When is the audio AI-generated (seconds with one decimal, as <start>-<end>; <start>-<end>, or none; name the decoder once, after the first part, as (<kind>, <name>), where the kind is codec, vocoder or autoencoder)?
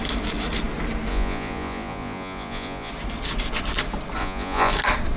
1.1-2.9 (vocoder, Vocos); 4.2-4.7